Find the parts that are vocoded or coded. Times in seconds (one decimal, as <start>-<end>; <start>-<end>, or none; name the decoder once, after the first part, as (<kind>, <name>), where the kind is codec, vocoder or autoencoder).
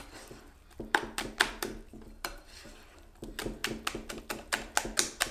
none